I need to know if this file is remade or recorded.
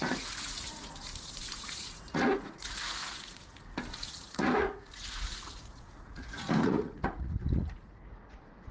remade